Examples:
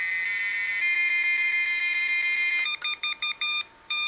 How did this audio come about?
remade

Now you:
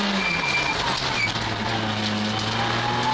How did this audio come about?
recorded